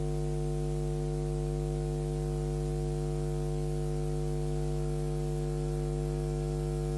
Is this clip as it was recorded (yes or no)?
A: yes